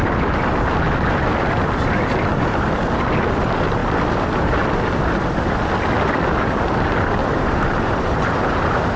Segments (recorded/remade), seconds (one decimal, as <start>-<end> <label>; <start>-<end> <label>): 0.0-7.2 recorded; 7.2-9.0 remade